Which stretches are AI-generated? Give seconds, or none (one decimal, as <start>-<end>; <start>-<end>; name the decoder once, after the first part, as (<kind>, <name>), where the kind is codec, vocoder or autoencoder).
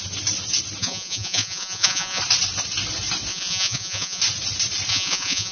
0.8-2.2 (vocoder, Vocos); 3.3-4.2; 4.9-5.5